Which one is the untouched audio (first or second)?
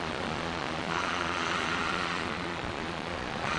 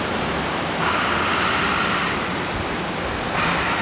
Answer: second